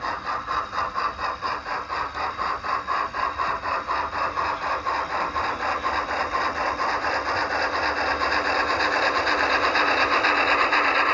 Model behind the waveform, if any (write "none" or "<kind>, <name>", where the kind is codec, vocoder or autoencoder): none